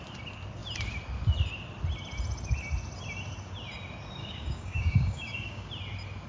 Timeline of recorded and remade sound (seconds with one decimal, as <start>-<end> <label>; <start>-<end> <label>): 0.0-4.2 recorded; 4.2-5.7 remade; 5.7-6.3 recorded